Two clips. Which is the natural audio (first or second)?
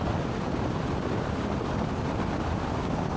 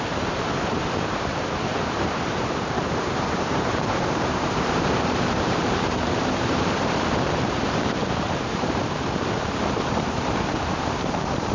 first